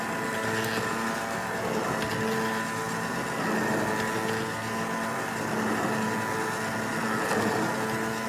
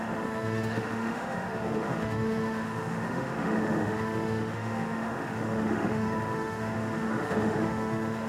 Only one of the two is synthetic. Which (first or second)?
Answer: second